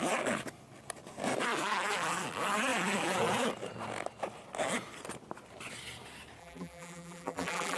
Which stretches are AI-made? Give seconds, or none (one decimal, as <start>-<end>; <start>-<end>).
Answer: 6.4-7.8